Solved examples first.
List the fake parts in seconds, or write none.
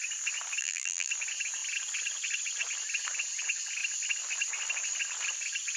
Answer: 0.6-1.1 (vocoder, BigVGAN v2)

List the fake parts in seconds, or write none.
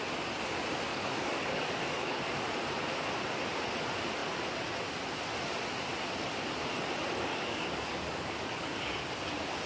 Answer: 0.9-2.2 (codec, DAC); 7.3-9.1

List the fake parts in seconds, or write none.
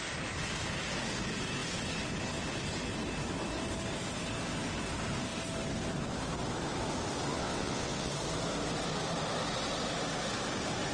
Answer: 7.3-8.1 (vocoder, WaveNeXt)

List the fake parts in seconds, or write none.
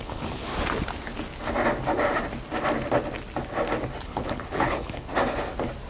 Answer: 0.0-0.5 (codec, HILCodec); 4.0-5.1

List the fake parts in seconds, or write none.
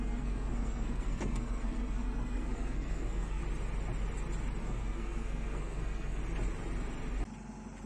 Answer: 0.0-3.4 (codec, SNAC); 4.6-6.2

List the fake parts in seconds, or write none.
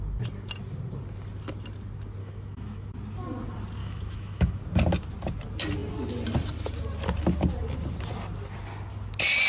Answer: 2.2-2.9 (autoencoder, DAC-VAE); 3.8-4.6